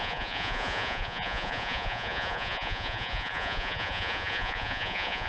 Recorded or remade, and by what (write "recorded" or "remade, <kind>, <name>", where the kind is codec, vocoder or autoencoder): remade, vocoder, Vocos